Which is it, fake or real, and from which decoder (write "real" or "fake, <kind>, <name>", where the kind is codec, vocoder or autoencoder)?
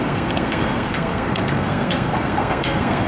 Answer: fake, codec, SNAC